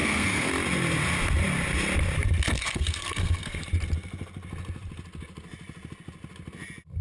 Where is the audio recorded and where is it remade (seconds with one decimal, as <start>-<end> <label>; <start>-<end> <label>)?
0.0-0.5 remade; 0.5-2.6 recorded; 2.6-3.6 remade; 3.6-7.0 recorded